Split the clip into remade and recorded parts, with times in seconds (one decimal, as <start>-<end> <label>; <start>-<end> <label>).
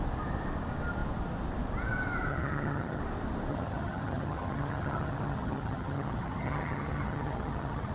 0.0-2.3 recorded; 2.3-3.0 remade; 3.0-3.5 recorded; 3.5-7.9 remade